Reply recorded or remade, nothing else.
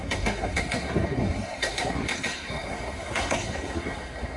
remade